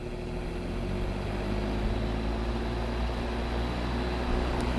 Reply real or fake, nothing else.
real